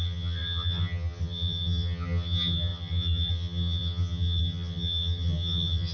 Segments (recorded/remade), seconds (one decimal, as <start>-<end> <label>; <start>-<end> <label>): 0.0-5.9 remade